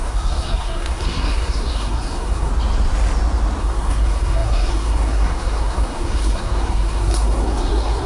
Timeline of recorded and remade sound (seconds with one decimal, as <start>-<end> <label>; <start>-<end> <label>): 0.0-2.5 remade; 2.5-3.6 recorded; 3.6-8.1 remade